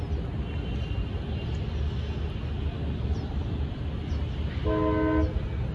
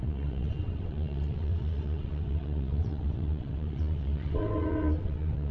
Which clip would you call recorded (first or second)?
first